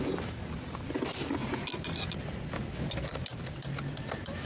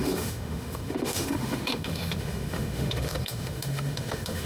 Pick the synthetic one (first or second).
second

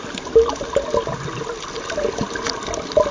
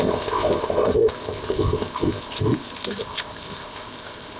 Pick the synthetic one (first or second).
second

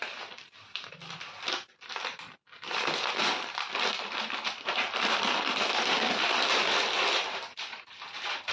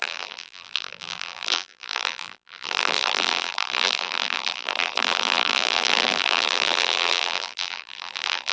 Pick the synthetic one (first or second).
second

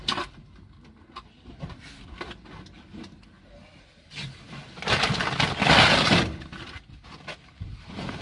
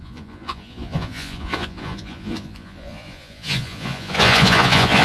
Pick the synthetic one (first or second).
second